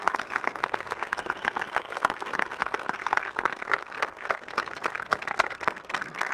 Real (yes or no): no